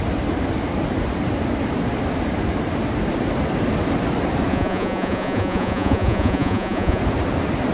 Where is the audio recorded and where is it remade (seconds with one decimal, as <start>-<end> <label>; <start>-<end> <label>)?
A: 0.0-4.5 recorded; 4.5-7.0 remade; 7.0-7.7 recorded